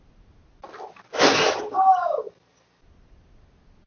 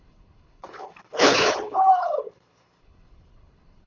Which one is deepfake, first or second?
second